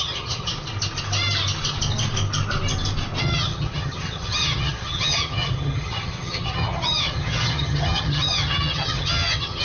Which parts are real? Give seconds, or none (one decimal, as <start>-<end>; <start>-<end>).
0.5-3.2